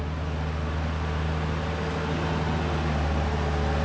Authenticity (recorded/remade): recorded